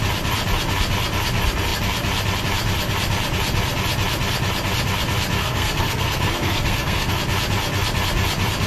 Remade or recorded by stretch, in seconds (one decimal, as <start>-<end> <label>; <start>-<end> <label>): 0.0-5.4 recorded; 5.4-7.1 remade; 7.1-8.7 recorded